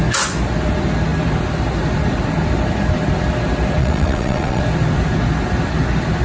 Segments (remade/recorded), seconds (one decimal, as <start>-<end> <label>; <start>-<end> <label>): 0.0-3.8 recorded; 3.8-4.6 remade; 4.6-6.2 recorded